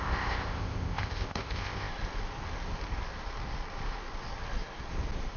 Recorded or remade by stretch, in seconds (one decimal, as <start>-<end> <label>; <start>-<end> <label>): 0.0-1.9 remade; 1.9-5.4 recorded